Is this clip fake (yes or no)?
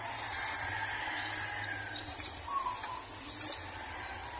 no